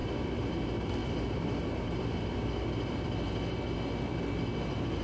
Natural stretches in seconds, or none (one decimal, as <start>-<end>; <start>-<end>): 0.0-1.0; 2.1-5.0